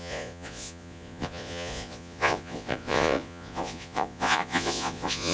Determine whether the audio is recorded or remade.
remade